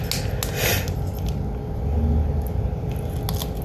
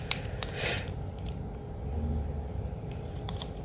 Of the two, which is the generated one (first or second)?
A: second